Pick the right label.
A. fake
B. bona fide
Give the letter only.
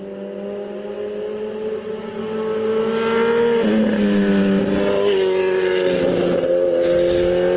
B